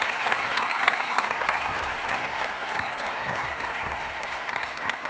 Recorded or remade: remade